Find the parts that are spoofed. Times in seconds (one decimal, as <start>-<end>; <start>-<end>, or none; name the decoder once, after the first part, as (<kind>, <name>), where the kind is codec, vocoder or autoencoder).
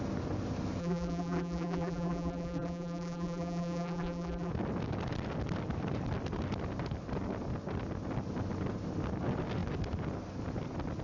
0.8-4.5 (vocoder, BigVGAN v2)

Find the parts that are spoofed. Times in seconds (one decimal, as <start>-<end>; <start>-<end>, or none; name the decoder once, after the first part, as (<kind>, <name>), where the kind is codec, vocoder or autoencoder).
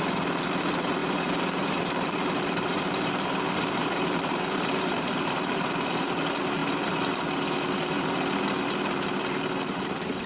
1.0-6.1 (vocoder, BigVGAN v2)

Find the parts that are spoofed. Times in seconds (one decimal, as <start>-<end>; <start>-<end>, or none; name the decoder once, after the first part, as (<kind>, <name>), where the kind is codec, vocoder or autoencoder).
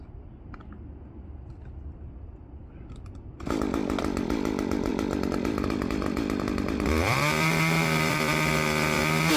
4.9-9.0 (vocoder, BigVGAN v2)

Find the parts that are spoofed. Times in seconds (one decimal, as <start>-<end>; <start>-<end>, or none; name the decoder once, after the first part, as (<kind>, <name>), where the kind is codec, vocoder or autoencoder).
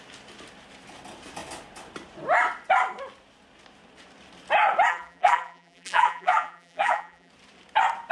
4.9-7.3 (vocoder, BigVGAN v2)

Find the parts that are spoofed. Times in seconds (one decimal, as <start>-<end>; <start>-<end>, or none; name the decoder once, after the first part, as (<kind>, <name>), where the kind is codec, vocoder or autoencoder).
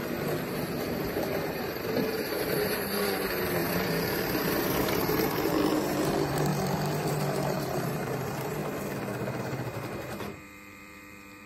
0.7-6.5 (vocoder, BigVGAN v2); 7.1-8.6; 9.4-11.5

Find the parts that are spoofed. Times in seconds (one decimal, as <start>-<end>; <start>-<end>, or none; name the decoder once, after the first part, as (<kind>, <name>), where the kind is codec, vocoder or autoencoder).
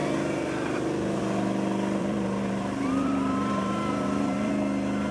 0.0-1.2 (vocoder, BigVGAN v2); 2.0-4.5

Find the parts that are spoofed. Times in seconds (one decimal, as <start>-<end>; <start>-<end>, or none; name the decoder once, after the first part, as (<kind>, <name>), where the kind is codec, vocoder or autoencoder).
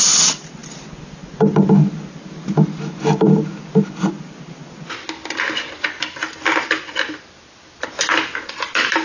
none